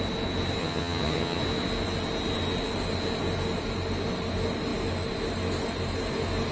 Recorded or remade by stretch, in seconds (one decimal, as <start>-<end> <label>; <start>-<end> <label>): 0.0-0.6 recorded; 0.6-1.4 remade; 1.4-6.5 recorded